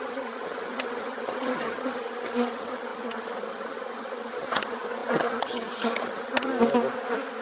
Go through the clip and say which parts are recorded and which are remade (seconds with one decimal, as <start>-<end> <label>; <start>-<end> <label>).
0.0-6.5 remade; 6.5-7.4 recorded

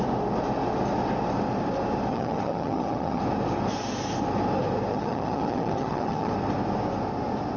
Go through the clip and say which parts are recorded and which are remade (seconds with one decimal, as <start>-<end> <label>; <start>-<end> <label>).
0.0-2.1 recorded; 2.1-3.2 remade; 3.2-4.9 recorded; 4.9-6.3 remade; 6.3-7.6 recorded

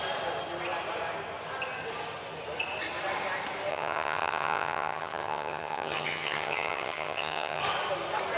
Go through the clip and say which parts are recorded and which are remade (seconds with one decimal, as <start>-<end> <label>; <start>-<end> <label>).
0.0-3.7 recorded; 3.7-7.6 remade; 7.6-8.4 recorded

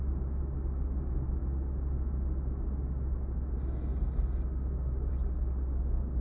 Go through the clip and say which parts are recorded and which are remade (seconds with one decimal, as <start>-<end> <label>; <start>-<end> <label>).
0.0-6.2 recorded

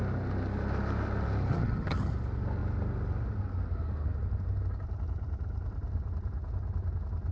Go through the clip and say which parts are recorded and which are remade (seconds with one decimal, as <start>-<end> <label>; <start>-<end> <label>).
0.0-1.5 recorded; 1.5-2.1 remade; 2.1-7.3 recorded

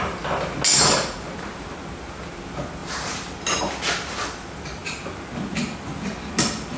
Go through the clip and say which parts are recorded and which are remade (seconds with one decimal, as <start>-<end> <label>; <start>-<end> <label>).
0.0-6.8 recorded

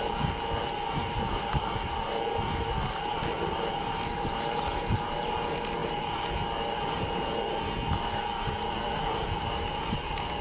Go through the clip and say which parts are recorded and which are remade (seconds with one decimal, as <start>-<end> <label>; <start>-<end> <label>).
0.0-10.4 recorded

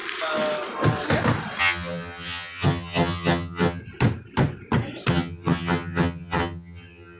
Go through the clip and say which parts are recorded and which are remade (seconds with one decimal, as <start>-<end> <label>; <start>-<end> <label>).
0.0-1.6 recorded; 1.6-3.8 remade; 3.8-5.1 recorded; 5.1-7.2 remade